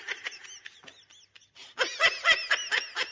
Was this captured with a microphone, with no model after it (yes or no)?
yes